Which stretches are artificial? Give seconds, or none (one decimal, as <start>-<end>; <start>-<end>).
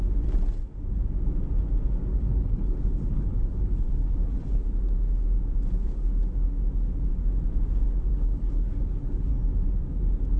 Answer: 2.1-4.6; 8.1-9.3